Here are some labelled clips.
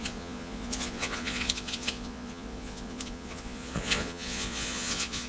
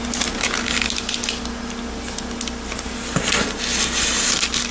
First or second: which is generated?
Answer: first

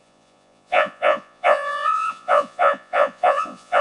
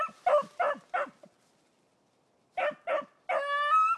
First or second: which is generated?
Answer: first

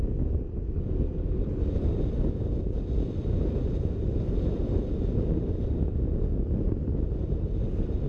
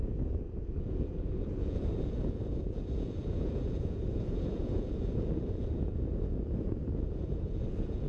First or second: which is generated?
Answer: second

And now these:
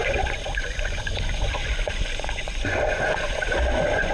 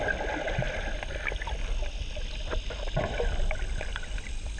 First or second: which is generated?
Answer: first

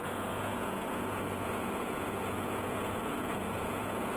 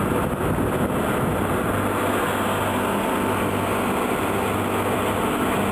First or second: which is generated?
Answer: first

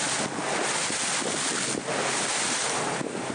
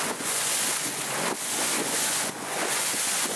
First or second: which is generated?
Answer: second